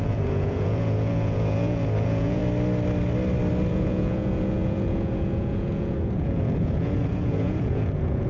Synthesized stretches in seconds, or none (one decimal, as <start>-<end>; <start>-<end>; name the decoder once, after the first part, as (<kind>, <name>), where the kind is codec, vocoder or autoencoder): 0.0-2.4 (vocoder, Vocos); 3.7-8.3